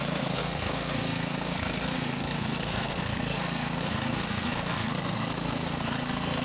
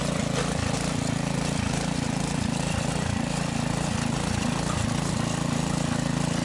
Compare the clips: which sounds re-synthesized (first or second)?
first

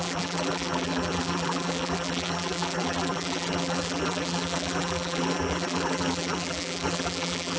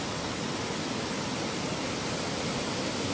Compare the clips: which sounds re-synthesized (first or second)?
first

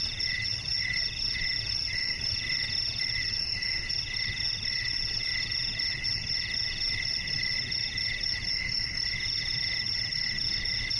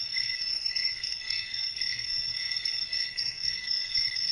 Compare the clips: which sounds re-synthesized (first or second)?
second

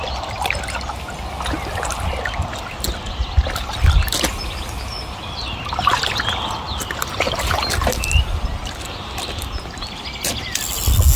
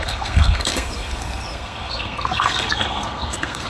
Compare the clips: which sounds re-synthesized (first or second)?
second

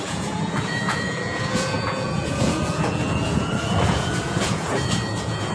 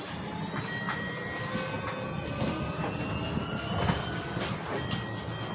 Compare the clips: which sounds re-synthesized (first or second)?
first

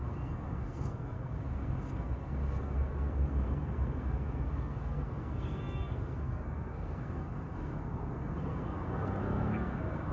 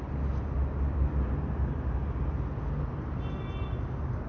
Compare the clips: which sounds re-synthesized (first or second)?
first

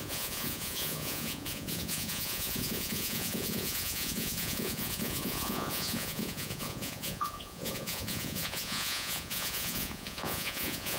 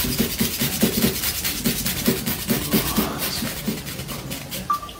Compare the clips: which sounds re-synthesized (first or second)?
first